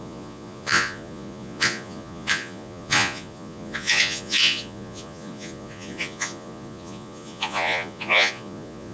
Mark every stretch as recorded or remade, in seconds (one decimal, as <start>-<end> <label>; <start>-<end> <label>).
0.0-8.9 remade